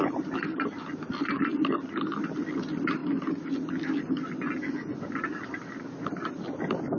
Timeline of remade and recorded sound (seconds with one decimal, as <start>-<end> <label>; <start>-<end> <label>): 0.0-7.0 recorded